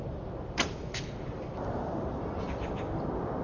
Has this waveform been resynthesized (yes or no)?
yes